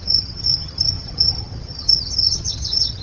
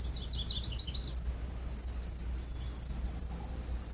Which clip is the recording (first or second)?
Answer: second